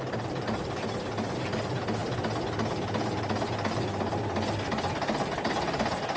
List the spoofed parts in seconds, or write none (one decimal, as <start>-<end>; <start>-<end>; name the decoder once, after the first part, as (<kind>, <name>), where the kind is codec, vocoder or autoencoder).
none